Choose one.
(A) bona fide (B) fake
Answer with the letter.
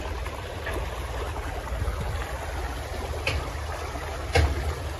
A